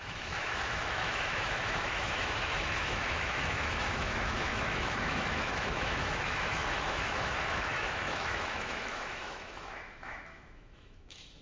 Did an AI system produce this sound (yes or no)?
yes